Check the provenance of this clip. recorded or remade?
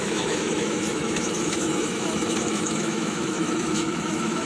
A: remade